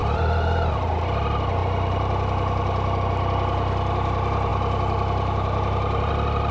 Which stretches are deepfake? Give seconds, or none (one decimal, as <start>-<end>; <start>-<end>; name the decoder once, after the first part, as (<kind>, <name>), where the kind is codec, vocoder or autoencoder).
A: 0.0-0.7 (vocoder, BigVGAN v2); 1.6-3.0; 4.5-6.1